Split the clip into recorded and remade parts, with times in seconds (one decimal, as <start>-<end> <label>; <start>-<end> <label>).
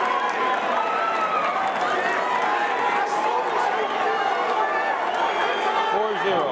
0.0-6.5 recorded